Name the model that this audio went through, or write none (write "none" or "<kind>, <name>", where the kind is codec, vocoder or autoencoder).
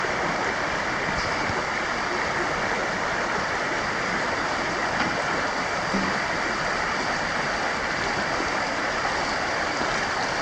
none